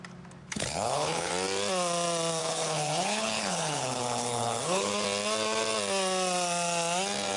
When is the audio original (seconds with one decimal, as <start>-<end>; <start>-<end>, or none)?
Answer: 0.0-0.4; 1.3-2.4; 4.9-7.4